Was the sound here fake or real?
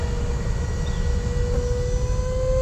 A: real